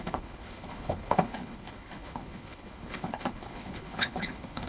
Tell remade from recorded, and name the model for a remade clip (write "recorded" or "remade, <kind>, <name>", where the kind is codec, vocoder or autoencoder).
remade, codec, HILCodec